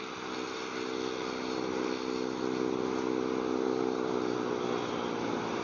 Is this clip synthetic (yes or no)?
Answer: no